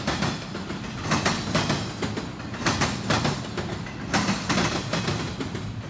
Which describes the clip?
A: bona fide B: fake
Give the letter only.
A